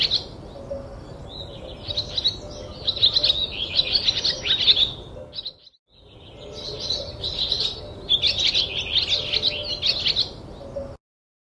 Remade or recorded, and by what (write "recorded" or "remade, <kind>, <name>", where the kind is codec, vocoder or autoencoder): recorded